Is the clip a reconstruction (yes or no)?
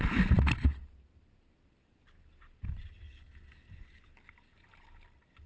no